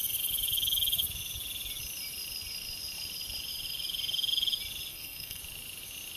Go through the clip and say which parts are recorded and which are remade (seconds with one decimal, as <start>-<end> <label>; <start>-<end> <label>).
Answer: 0.0-4.9 recorded; 4.9-5.4 remade; 5.4-6.2 recorded